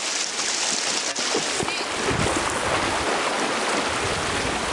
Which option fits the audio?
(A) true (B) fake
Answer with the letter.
A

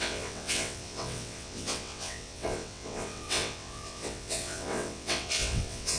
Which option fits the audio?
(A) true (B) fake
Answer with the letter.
B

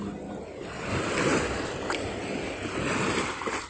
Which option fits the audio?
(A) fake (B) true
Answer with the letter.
B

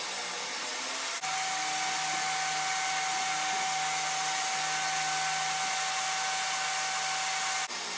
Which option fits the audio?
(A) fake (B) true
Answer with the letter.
B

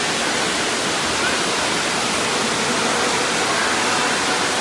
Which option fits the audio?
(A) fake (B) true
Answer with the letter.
B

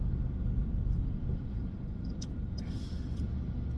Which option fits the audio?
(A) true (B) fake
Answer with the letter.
B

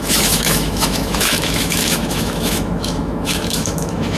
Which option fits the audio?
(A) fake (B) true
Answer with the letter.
A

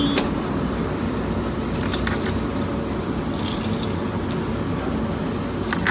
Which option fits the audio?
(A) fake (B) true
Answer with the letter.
B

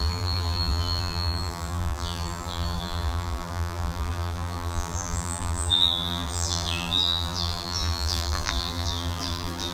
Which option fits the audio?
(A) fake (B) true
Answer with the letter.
A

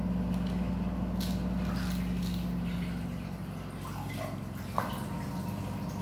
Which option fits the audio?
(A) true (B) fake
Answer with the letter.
A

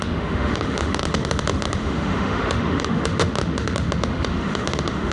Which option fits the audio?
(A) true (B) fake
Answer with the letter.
B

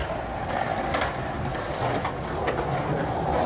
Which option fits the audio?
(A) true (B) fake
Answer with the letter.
A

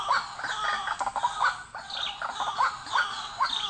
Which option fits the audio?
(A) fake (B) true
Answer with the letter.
B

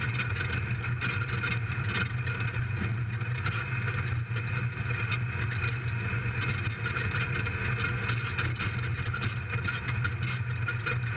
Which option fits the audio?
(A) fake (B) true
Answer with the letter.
B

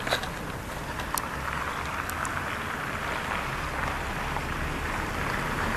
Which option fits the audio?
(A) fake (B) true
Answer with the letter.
B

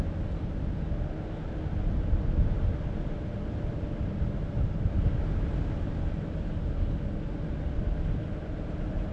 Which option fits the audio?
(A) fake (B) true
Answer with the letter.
B